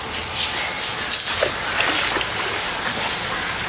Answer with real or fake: real